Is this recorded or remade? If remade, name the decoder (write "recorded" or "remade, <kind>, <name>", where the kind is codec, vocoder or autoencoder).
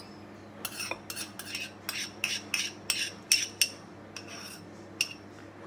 recorded